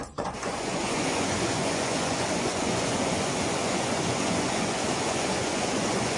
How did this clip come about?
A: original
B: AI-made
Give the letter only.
B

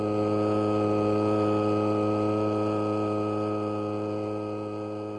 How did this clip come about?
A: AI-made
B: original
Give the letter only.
B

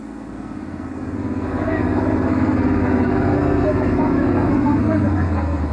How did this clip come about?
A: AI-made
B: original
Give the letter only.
A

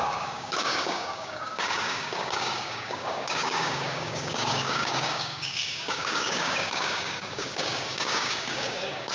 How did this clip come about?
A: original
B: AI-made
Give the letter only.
B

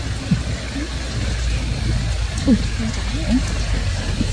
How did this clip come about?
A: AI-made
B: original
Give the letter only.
B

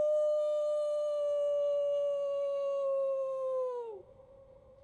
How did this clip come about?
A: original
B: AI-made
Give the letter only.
B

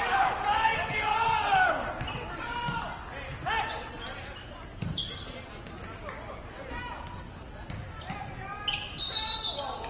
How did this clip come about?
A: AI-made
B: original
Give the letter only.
B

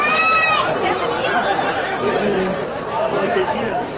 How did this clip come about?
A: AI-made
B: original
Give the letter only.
A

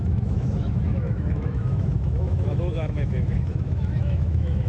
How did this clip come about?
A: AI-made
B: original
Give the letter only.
A